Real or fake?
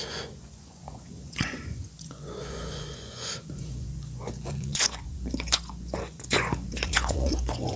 fake